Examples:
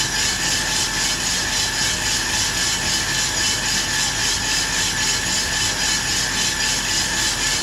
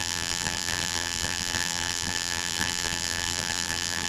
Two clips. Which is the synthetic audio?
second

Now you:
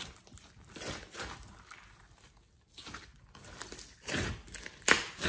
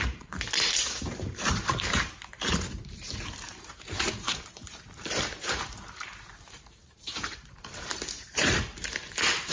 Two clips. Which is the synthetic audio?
second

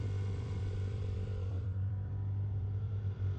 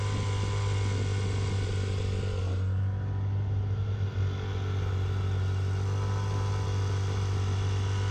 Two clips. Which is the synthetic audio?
first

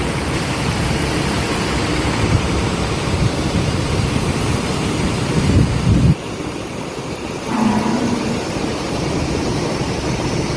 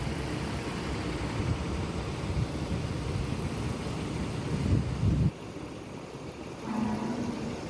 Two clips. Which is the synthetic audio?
first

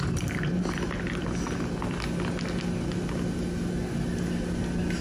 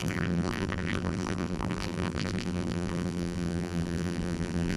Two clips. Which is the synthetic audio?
second